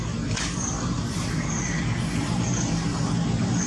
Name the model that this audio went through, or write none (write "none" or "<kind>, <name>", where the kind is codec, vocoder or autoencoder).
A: vocoder, BigVGAN v2